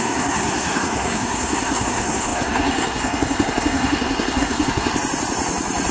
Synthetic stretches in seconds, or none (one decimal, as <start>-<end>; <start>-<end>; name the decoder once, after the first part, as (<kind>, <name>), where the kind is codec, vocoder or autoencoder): 0.0-4.9 (codec, SNAC)